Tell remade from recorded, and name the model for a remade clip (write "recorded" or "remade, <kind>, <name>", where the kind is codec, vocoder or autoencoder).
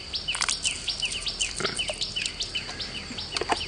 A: recorded